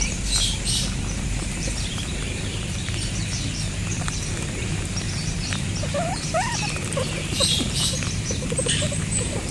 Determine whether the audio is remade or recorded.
remade